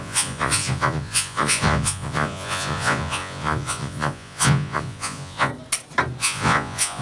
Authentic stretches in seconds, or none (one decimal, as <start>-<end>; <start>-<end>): 5.5-6.2